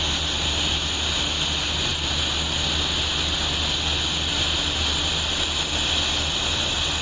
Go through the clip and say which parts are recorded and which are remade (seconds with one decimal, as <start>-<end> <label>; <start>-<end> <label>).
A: 0.0-7.0 recorded